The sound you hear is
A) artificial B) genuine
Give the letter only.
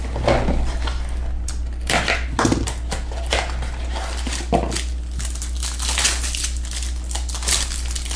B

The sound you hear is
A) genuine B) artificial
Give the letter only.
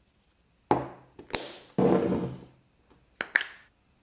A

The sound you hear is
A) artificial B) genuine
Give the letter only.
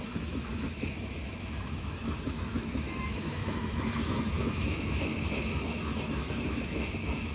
A